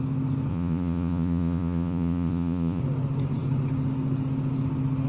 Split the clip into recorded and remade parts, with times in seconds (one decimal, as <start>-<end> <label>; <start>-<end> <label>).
0.0-0.5 recorded; 0.5-2.8 remade; 2.8-5.1 recorded